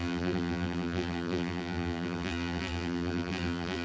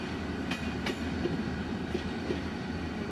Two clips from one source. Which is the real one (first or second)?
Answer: second